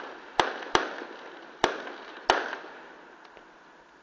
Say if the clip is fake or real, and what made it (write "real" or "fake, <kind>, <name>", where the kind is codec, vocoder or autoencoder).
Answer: real